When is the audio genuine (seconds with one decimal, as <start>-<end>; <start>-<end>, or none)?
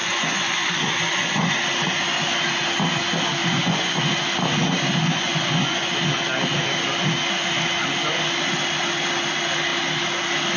1.5-3.4; 4.0-5.0; 5.9-10.6